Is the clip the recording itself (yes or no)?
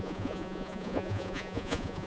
no